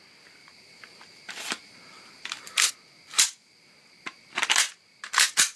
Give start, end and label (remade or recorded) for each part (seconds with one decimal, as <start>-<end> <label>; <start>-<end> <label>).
0.0-0.4 recorded; 0.4-2.7 remade; 2.7-3.1 recorded; 3.1-3.7 remade; 3.7-5.6 recorded